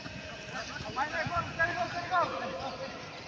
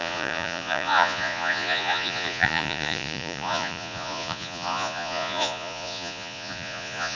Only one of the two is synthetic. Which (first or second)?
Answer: second